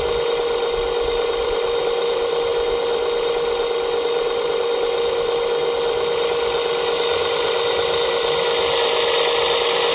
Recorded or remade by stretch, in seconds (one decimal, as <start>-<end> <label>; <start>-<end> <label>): 0.0-9.9 recorded